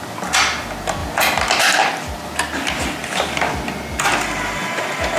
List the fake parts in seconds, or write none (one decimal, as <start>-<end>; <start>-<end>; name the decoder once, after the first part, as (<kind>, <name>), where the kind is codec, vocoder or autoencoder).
none